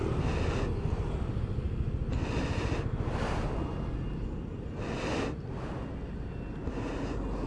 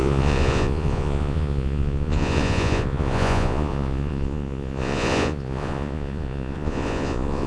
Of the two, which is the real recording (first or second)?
first